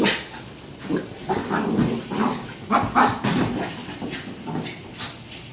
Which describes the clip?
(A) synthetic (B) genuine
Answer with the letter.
B